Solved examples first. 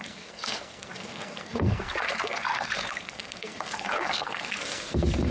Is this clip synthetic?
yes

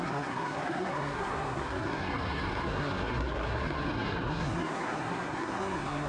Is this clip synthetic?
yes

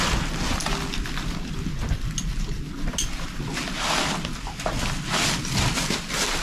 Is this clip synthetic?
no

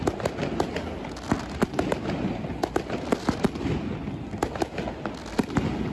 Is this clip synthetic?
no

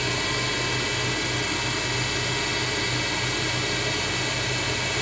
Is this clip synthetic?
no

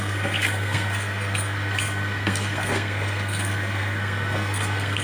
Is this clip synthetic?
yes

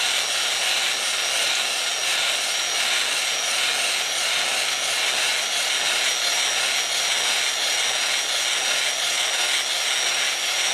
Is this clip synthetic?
no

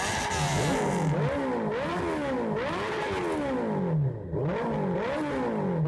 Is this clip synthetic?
no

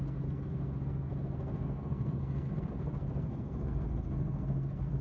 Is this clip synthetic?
yes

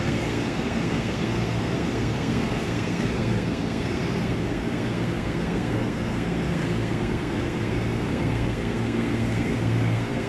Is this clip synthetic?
yes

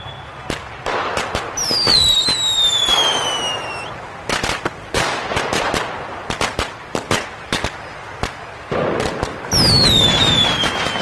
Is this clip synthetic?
no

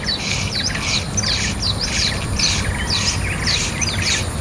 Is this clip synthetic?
no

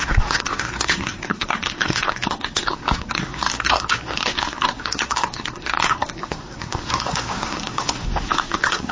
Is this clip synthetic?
yes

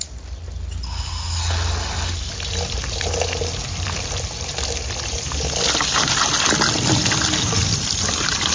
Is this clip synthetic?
no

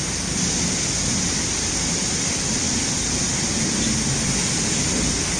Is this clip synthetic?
no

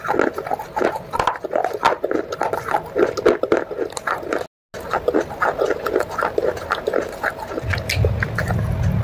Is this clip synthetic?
no